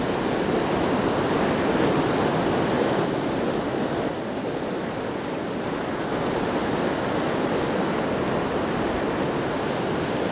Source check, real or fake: real